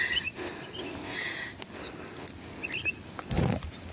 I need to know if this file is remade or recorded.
recorded